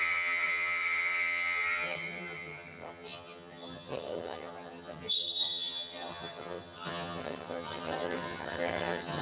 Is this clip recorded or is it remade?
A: remade